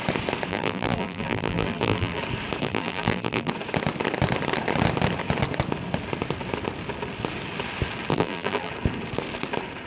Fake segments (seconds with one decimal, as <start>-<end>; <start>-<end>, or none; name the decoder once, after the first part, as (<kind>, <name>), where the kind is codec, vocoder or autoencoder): 0.5-2.2 (vocoder, BigVGAN v2); 2.6-3.5; 8.1-8.7